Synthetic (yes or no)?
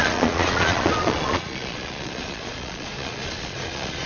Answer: yes